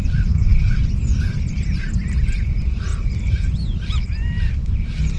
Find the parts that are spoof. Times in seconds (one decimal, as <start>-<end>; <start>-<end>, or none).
none